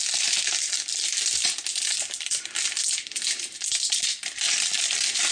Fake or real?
real